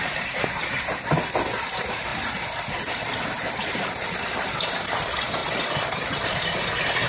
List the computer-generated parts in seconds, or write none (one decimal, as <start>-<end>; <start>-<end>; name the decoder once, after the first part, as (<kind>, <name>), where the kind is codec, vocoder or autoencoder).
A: 2.1-2.6 (vocoder, BigVGAN v2); 5.4-6.4